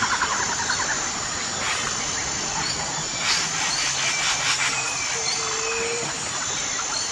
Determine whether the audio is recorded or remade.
recorded